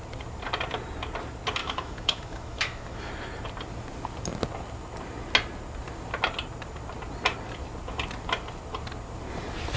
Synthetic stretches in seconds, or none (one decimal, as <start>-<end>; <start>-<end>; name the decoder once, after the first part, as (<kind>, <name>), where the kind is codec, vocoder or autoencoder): 1.6-3.1 (autoencoder, DAC-VAE)